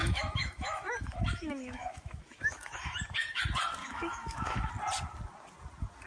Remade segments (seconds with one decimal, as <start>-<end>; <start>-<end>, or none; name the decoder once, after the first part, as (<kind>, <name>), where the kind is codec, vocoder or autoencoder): 0.0-3.4 (autoencoder, DAC-VAE); 3.8-4.7